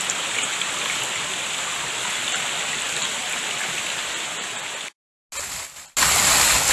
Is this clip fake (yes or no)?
no